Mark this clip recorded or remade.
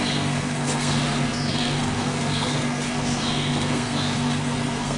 remade